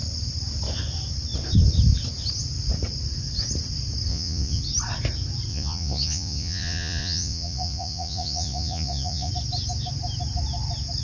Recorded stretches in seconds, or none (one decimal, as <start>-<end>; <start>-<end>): 0.0-4.1; 4.6-5.5; 9.3-11.0